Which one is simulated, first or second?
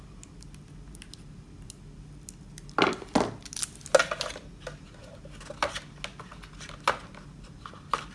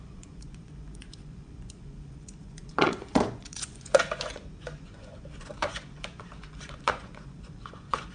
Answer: second